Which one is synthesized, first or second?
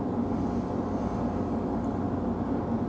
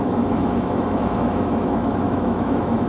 second